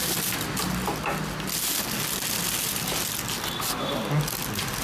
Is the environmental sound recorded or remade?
recorded